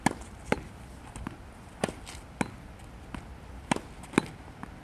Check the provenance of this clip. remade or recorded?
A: recorded